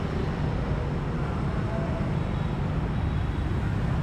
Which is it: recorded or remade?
recorded